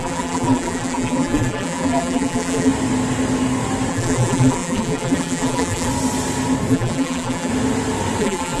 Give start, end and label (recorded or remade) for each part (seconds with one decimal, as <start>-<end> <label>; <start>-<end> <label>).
0.0-2.7 remade; 2.7-3.9 recorded; 3.9-5.9 remade; 5.9-6.7 recorded; 6.7-7.5 remade; 7.5-8.2 recorded; 8.2-8.6 remade